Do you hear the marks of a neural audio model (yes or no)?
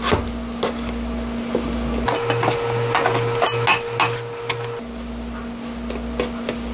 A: no